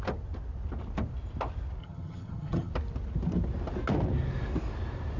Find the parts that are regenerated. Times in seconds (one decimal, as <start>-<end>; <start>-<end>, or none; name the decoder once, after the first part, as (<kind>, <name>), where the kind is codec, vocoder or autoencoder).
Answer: 1.8-2.7 (vocoder, HiFi-GAN)